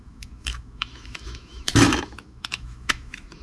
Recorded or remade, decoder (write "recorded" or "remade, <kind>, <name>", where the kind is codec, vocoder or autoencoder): remade, autoencoder, DAC-VAE